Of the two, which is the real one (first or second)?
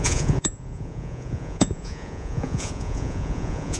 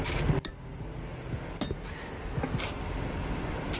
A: second